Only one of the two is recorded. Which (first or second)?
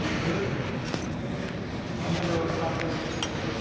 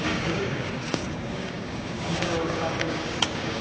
first